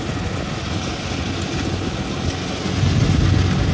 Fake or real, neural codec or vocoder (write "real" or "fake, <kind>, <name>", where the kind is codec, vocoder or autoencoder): real